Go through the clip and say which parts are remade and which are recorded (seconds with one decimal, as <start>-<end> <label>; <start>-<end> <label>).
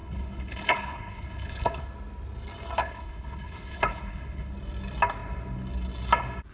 0.0-1.8 remade; 1.8-2.8 recorded; 2.8-4.5 remade; 4.5-6.5 recorded